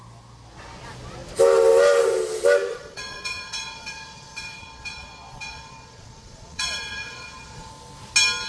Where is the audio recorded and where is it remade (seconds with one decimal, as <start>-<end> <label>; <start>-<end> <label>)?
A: 0.0-2.7 recorded; 2.7-7.7 remade; 7.7-8.5 recorded